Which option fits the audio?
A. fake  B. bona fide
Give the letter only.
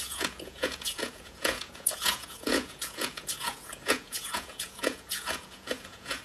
A